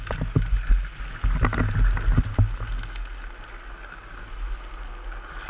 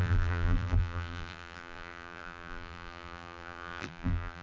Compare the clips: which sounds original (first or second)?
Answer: first